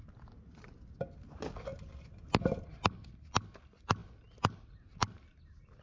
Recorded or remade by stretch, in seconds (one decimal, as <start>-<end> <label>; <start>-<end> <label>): 0.0-5.8 recorded